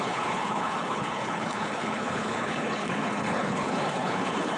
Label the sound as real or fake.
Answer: fake